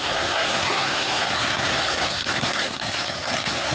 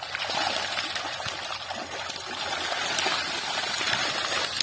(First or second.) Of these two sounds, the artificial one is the first